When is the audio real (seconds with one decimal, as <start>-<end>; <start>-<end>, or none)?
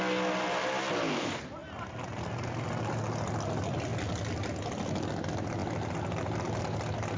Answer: 0.0-7.2